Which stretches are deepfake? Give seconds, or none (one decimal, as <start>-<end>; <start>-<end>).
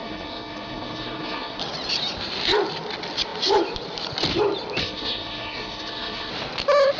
0.0-1.6; 4.8-6.3